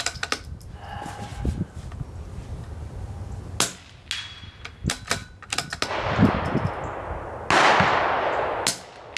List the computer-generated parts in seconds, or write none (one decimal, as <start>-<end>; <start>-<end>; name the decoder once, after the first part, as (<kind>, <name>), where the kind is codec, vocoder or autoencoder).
none